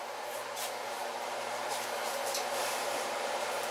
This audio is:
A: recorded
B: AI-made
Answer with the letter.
B